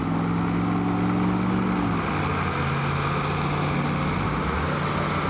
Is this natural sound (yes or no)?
yes